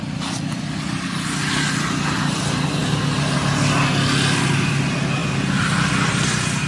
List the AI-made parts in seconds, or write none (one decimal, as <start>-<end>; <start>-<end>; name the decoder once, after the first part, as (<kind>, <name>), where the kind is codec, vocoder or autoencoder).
none